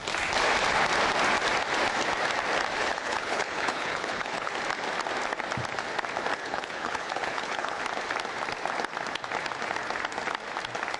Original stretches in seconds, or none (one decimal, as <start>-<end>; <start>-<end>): 0.0-2.8; 4.5-6.3; 7.8-11.0